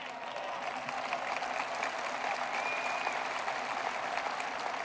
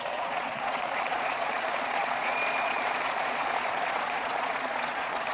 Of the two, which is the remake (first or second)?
second